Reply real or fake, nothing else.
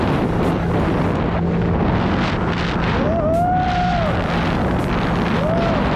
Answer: real